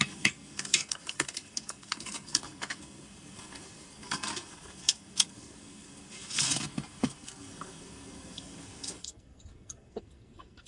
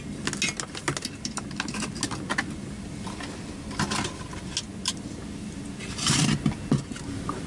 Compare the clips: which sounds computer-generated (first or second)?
first